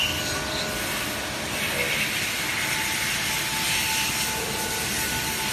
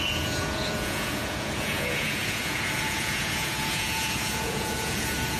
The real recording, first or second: first